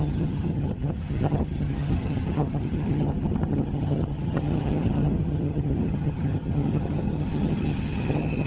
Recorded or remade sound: remade